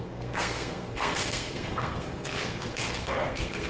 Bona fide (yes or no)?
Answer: no